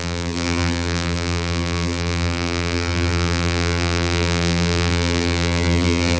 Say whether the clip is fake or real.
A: fake